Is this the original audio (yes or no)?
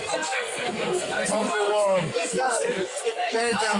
no